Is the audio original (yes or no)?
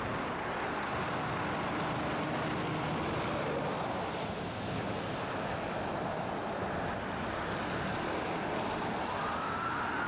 yes